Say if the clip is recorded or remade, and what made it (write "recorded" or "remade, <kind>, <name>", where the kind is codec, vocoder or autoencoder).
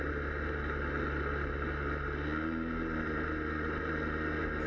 recorded